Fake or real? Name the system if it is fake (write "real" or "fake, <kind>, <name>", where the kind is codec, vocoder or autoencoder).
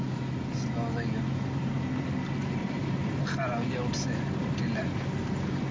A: real